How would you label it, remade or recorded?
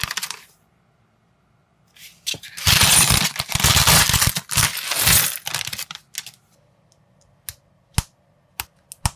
recorded